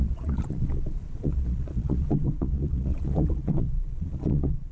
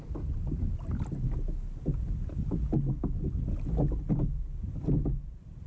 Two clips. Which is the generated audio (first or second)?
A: first